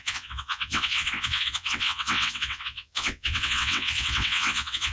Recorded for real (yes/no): no